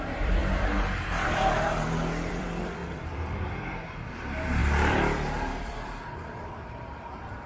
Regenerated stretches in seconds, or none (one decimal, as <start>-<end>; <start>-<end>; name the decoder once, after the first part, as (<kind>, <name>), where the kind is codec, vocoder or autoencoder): 0.0-7.5 (vocoder, BigVGAN v2)